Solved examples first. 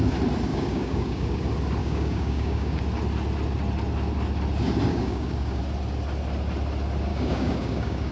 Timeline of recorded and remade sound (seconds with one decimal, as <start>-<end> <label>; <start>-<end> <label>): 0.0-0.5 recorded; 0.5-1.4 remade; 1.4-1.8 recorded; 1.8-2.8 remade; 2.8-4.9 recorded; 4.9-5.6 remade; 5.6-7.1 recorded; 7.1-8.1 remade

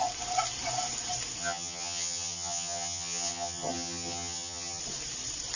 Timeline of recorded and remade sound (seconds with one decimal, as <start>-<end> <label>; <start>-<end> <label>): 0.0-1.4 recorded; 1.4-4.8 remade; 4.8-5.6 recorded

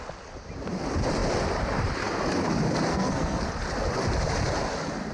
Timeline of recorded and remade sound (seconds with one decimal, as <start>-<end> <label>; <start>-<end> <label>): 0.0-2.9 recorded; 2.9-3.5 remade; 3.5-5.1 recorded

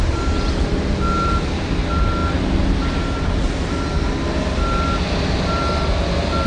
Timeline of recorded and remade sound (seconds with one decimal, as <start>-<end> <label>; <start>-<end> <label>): 0.0-6.5 recorded

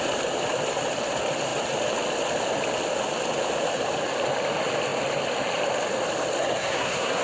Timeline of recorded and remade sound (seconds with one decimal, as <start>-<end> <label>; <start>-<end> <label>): 0.0-6.4 recorded; 6.4-7.2 remade

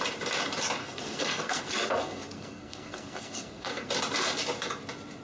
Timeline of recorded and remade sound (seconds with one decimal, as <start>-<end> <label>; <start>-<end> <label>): 0.0-0.8 recorded; 0.8-3.9 remade; 3.9-5.2 recorded

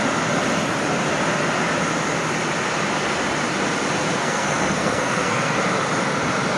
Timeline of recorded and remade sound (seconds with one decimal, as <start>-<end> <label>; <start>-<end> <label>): 0.0-4.2 recorded; 4.2-5.6 remade; 5.6-6.6 recorded